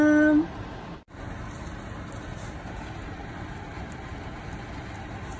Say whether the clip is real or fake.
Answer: real